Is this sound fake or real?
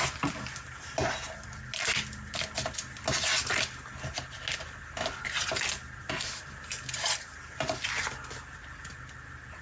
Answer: real